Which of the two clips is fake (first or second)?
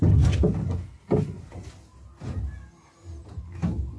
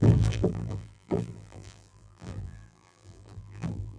second